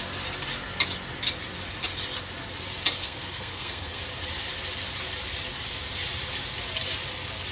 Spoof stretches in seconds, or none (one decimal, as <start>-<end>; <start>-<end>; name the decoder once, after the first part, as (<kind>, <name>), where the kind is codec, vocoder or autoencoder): 3.0-4.0 (codec, SNAC)